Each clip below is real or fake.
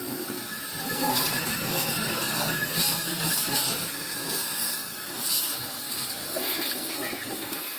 fake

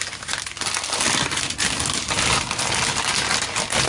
real